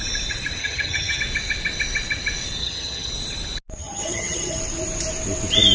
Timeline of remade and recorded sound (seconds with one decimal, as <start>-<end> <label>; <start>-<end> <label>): 0.0-0.6 recorded; 0.6-1.2 remade; 1.2-2.6 recorded; 2.6-3.1 remade; 3.1-3.8 recorded; 3.8-4.6 remade; 4.6-5.7 recorded